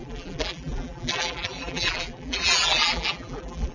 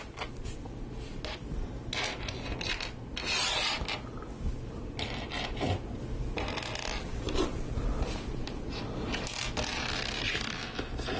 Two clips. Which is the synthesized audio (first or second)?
first